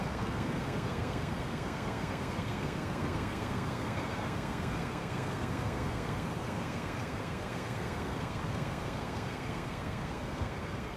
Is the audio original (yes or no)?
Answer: no